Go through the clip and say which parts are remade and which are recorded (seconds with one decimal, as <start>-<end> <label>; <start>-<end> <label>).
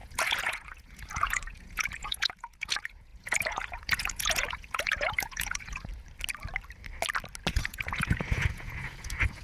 0.0-5.9 remade; 5.9-7.5 recorded; 7.5-9.4 remade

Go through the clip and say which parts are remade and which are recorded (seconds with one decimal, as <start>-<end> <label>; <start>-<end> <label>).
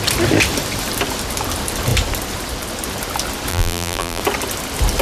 0.0-3.5 recorded; 3.5-4.2 remade; 4.2-5.0 recorded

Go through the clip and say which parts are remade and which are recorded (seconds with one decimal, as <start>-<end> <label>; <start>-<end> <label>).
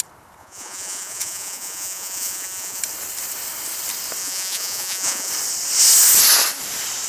0.0-0.4 recorded; 0.4-2.8 remade; 2.8-4.2 recorded; 4.2-5.3 remade; 5.3-7.1 recorded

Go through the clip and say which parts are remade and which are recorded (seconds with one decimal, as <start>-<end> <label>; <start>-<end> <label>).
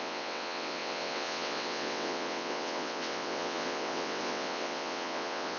0.0-5.6 remade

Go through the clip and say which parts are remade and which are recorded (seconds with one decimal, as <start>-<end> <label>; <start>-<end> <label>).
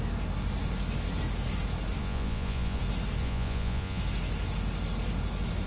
0.0-2.0 recorded; 2.0-2.8 remade; 2.8-3.2 recorded; 3.2-4.0 remade; 4.0-5.7 recorded